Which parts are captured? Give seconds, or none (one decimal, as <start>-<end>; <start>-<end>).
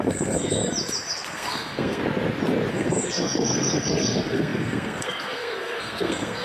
0.6-1.1; 2.0-2.7